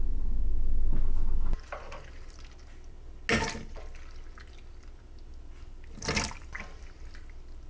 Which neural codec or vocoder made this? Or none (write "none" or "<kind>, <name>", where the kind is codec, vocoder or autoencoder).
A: none